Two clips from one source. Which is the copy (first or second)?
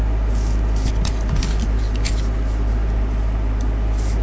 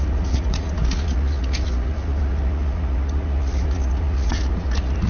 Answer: second